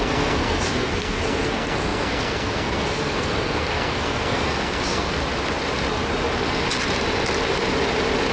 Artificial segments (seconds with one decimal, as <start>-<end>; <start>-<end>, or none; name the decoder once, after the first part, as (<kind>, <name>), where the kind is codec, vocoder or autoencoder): 0.0-5.2 (codec, SNAC)